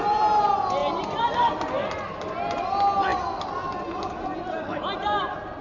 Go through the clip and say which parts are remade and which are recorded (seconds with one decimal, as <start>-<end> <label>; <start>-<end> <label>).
0.0-5.6 recorded